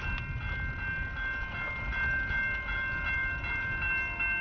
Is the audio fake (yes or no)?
no